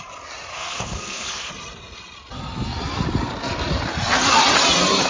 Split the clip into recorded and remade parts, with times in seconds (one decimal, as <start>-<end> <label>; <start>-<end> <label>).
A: 0.0-0.5 recorded; 0.5-1.5 remade; 1.5-5.1 recorded